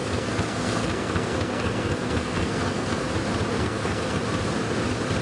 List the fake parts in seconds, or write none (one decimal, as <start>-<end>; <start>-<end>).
0.0-3.1; 3.5-4.2